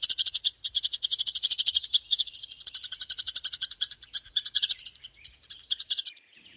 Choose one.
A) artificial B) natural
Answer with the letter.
A